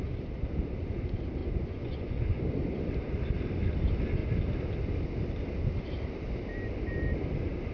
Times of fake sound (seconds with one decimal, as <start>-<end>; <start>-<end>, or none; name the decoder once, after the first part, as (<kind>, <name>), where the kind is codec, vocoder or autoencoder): 1.4-2.4 (vocoder, Vocos)